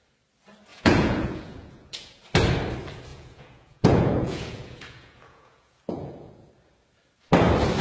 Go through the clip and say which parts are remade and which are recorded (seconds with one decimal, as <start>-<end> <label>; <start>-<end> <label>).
0.0-0.7 recorded; 0.7-2.2 remade; 2.2-3.1 recorded; 3.1-6.5 remade; 6.5-7.8 recorded